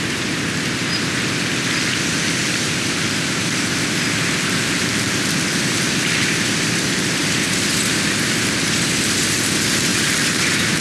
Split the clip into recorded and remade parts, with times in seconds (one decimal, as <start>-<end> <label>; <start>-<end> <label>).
0.0-2.4 recorded; 2.4-7.2 remade; 7.2-9.9 recorded; 9.9-10.8 remade